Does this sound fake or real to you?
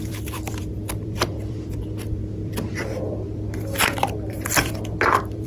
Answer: fake